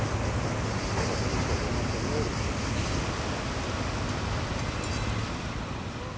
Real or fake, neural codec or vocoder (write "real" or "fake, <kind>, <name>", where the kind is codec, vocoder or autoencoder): real